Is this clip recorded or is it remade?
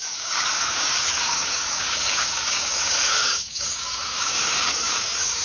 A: remade